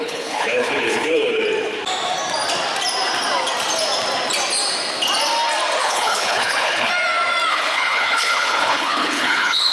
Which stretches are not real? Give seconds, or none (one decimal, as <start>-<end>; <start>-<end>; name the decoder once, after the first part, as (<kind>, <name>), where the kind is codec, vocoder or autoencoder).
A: 0.0-1.4 (codec, HILCodec); 5.8-6.9; 7.5-9.7